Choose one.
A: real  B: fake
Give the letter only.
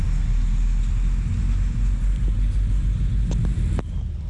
A